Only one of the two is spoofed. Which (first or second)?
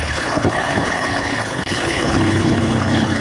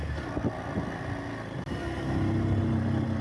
first